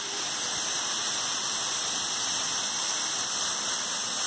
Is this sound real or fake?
real